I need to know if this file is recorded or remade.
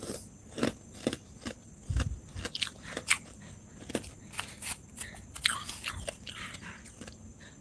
recorded